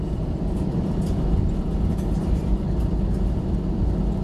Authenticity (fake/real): real